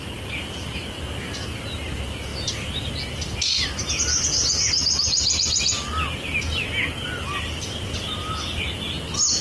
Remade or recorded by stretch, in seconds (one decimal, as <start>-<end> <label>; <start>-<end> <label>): 0.0-9.4 recorded